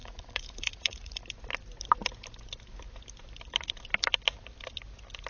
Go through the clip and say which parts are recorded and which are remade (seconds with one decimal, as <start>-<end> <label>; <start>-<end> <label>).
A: 0.0-1.2 remade; 1.2-5.3 recorded